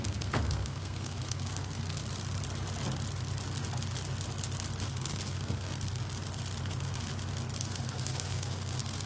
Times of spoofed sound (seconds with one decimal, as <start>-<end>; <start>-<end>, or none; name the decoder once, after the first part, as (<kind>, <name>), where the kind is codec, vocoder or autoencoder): 0.0-2.0 (codec, SNAC); 4.9-6.0; 6.6-7.1; 7.6-9.1